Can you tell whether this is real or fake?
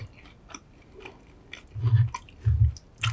real